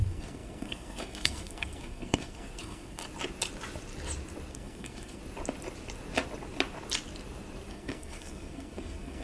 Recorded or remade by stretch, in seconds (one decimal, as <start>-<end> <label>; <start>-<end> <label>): 0.0-3.0 remade; 3.0-4.5 recorded; 4.5-5.2 remade; 5.2-7.7 recorded; 7.7-9.2 remade